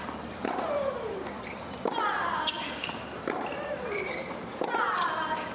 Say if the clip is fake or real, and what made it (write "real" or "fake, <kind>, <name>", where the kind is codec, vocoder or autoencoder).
fake, vocoder, BigVGAN v2